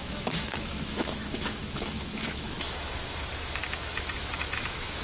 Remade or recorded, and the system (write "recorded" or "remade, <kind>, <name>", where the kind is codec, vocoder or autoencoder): remade, autoencoder, DAC-VAE